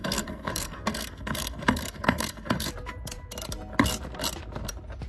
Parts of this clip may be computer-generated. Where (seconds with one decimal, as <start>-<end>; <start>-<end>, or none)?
0.0-2.7